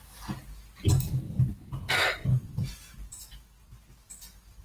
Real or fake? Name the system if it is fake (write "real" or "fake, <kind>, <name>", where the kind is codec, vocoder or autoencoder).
real